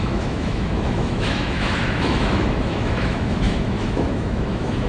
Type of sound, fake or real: fake